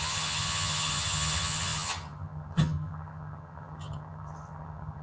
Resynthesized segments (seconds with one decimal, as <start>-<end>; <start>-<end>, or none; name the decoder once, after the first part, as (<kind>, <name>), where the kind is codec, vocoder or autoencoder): 0.0-5.0 (vocoder, HiFi-GAN)